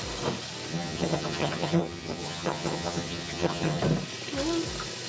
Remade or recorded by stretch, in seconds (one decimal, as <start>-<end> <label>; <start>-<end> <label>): 0.0-0.7 recorded; 0.7-3.8 remade; 3.8-5.1 recorded